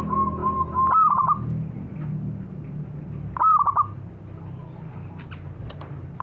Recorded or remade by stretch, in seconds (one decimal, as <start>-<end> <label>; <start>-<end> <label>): 0.0-6.2 recorded